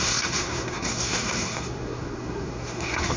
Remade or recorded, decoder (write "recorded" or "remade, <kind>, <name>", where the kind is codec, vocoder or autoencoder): remade, codec, SNAC